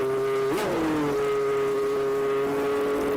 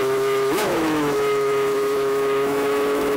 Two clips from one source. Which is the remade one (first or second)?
second